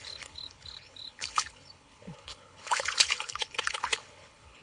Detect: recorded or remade remade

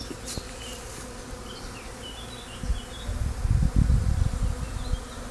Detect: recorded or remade recorded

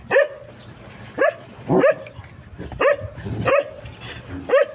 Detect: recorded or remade recorded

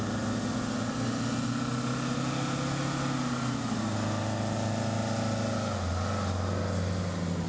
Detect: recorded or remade recorded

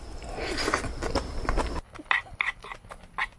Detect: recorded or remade recorded